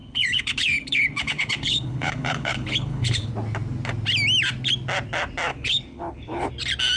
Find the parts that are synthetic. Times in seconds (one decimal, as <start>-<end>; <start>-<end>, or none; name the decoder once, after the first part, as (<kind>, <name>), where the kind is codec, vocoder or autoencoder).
0.0-3.3 (codec, HILCodec); 5.5-6.5